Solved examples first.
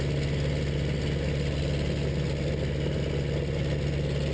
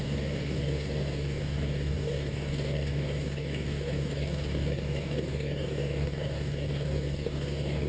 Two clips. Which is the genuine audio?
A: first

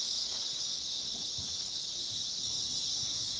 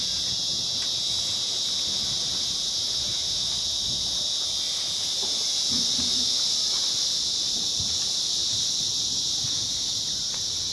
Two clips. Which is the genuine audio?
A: second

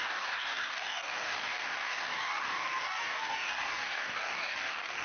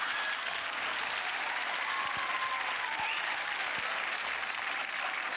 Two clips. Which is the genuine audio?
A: second